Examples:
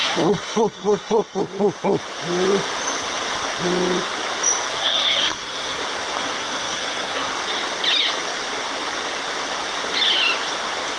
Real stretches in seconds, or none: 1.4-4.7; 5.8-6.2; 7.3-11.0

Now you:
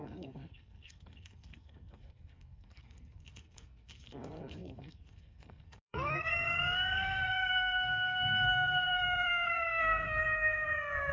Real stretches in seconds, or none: none

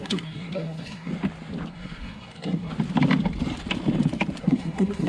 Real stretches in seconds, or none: 1.1-1.7; 2.7-4.4

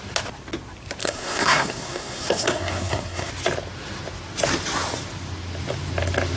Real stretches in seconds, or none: 0.0-1.0; 3.3-6.4